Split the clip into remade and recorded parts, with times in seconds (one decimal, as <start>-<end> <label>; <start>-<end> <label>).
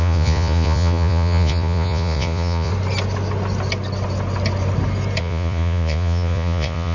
0.0-2.7 remade; 2.7-5.2 recorded; 5.2-6.9 remade